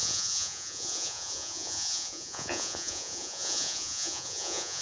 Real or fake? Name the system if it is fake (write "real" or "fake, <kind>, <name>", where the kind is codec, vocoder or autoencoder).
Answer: fake, vocoder, Vocos